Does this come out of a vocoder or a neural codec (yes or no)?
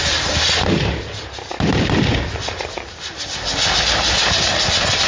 no